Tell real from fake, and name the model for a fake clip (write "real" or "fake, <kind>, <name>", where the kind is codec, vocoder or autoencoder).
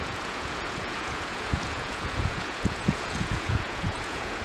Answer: fake, vocoder, Vocos